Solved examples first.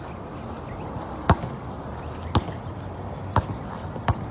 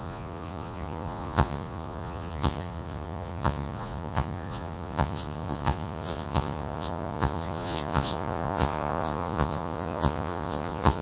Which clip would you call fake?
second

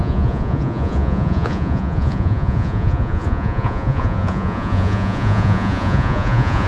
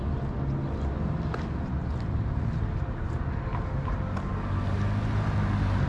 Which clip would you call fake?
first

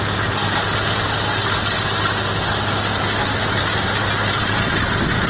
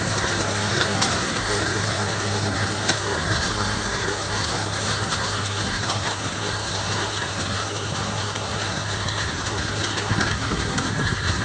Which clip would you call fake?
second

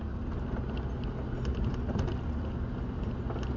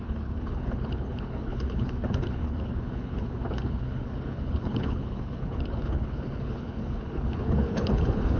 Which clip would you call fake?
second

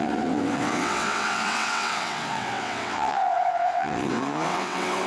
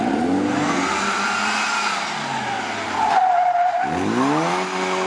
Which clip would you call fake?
first